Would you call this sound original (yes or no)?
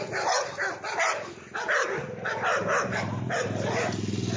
yes